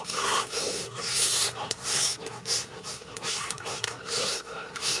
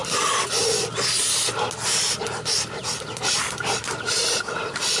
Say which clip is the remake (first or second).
first